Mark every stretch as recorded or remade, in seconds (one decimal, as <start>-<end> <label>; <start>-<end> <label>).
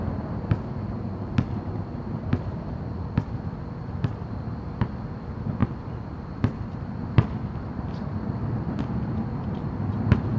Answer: 0.0-2.3 recorded; 2.3-4.5 remade; 4.5-5.6 recorded; 5.6-9.7 remade; 9.7-10.4 recorded